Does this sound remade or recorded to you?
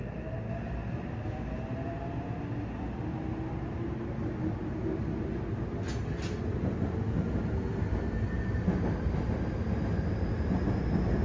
recorded